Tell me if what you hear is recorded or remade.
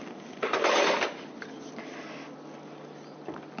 recorded